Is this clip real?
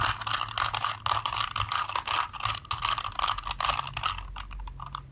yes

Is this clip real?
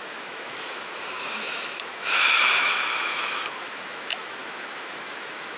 no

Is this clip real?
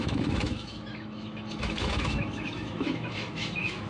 no